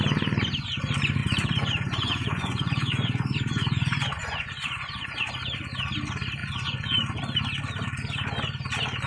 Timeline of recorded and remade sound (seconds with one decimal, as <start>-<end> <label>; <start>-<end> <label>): 0.0-1.2 recorded; 1.2-5.3 remade; 5.3-6.4 recorded; 6.4-7.2 remade; 7.2-9.1 recorded